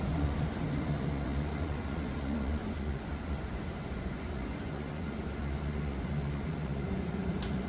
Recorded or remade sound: remade